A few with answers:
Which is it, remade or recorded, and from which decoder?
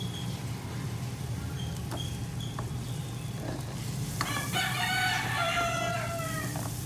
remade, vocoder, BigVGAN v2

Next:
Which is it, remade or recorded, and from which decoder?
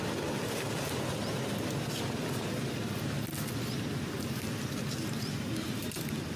recorded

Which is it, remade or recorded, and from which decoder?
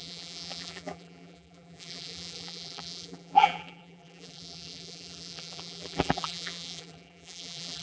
remade, vocoder, BigVGAN v2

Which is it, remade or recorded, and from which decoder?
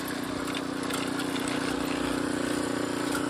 recorded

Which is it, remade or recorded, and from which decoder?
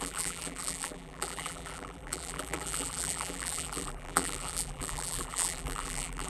remade, vocoder, BigVGAN v2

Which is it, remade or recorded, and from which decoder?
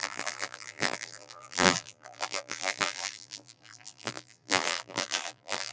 remade, vocoder, BigVGAN v2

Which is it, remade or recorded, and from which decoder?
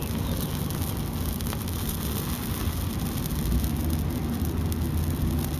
recorded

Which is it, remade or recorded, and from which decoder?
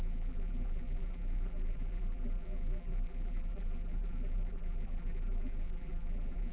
remade, vocoder, BigVGAN v2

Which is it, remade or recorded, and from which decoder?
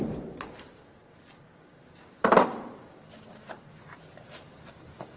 remade, vocoder, BigVGAN v2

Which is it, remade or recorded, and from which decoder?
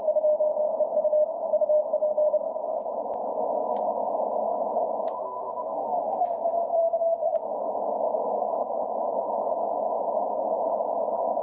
recorded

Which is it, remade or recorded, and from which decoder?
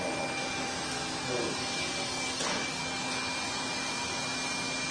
recorded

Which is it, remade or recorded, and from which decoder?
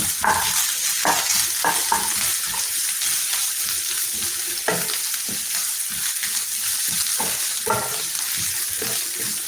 recorded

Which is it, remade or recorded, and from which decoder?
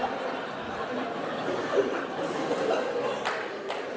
recorded